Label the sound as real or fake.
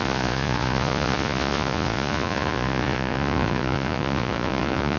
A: fake